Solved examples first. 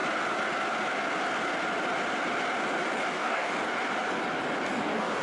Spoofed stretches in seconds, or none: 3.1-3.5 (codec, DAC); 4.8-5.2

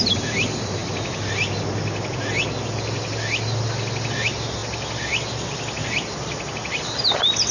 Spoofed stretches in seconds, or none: none